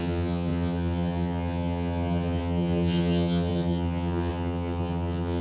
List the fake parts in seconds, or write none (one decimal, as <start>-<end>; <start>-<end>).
0.0-5.4